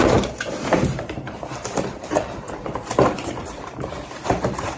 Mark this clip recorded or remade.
remade